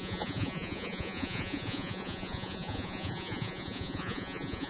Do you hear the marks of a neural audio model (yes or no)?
yes